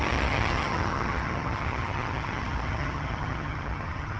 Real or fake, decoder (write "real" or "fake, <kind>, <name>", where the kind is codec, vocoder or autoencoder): fake, vocoder, HiFi-GAN